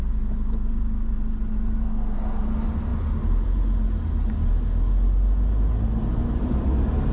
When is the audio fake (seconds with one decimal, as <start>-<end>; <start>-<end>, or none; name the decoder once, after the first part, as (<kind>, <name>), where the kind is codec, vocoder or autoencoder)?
none